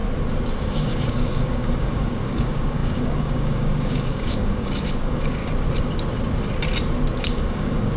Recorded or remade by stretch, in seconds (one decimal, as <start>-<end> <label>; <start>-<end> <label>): 0.0-0.6 recorded; 0.6-5.4 remade; 5.4-7.2 recorded; 7.2-8.0 remade